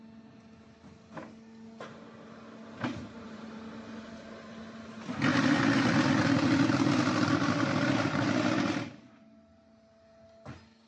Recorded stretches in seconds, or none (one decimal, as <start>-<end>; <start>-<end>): 0.0-10.9